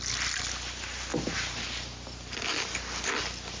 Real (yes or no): yes